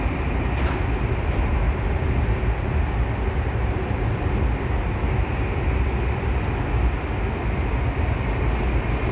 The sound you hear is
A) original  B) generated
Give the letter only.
A